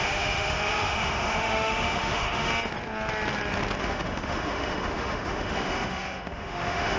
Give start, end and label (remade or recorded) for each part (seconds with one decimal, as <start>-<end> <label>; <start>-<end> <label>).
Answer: 0.0-2.5 remade; 2.5-3.8 recorded; 3.8-7.0 remade

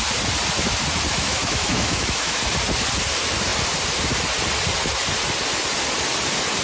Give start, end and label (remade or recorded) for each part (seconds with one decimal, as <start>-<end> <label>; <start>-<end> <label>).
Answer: 0.0-1.1 recorded; 1.1-2.4 remade; 2.4-6.6 recorded